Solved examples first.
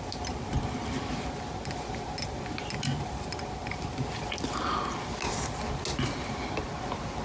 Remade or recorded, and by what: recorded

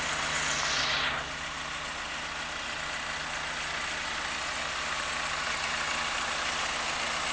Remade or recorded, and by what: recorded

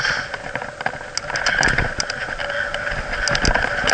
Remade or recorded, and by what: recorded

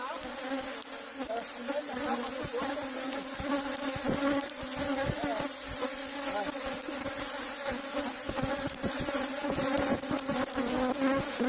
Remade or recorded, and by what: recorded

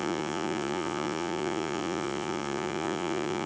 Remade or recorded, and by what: remade, vocoder, Vocos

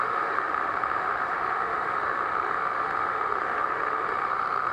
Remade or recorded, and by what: remade, autoencoder, DAC-VAE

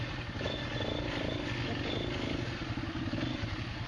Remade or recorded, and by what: recorded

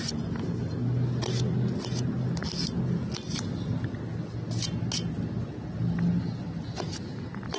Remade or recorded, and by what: recorded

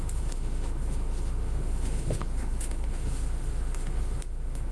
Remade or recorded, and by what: remade, autoencoder, DAC-VAE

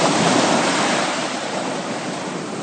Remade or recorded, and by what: remade, vocoder, BigVGAN v2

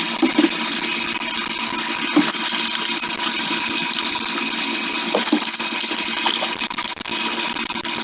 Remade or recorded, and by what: recorded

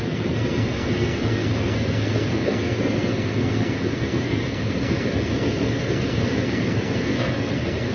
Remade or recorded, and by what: remade, codec, SNAC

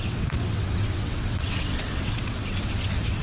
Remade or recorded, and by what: remade, vocoder, WaveNeXt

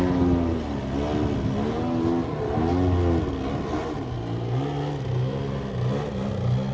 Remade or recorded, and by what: recorded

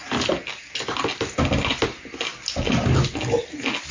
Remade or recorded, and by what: recorded